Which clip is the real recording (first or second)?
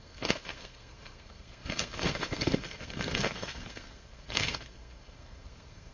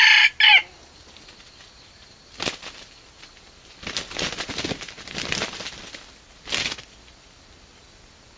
second